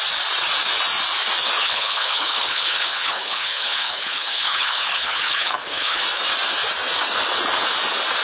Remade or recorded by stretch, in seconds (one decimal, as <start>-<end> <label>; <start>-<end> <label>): 0.0-1.6 recorded; 1.6-6.0 remade; 6.0-8.2 recorded

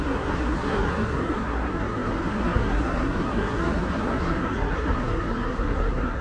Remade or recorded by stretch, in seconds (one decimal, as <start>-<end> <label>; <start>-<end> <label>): 0.0-6.2 remade

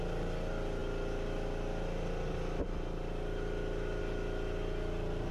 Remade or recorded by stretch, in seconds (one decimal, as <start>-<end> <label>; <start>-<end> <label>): 0.0-5.3 recorded

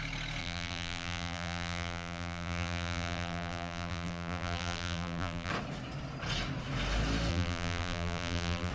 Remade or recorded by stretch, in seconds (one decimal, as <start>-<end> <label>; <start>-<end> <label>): 0.0-0.4 recorded; 0.4-5.5 remade; 5.5-7.3 recorded; 7.3-8.7 remade

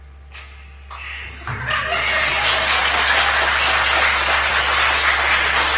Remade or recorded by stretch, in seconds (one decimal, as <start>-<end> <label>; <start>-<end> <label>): 0.0-5.8 recorded

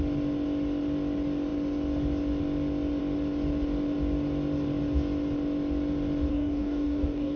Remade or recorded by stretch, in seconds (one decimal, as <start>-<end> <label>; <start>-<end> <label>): 0.0-6.3 recorded; 6.3-7.4 remade